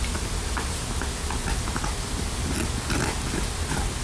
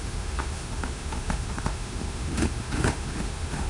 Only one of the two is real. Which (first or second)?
first